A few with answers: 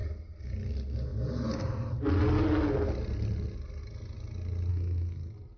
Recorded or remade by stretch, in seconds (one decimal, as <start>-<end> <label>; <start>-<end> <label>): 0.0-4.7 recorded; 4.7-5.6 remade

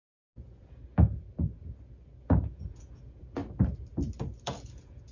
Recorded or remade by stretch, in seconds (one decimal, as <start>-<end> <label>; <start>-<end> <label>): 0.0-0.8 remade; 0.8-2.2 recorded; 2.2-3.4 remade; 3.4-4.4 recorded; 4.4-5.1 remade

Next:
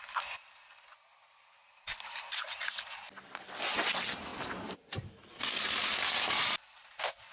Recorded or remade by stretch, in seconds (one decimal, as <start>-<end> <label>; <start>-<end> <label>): 0.0-7.3 recorded

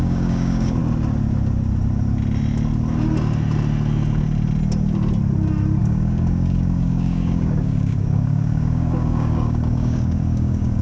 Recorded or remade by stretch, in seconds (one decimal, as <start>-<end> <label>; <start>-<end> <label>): 0.0-0.8 remade; 0.8-5.8 recorded; 5.8-10.8 remade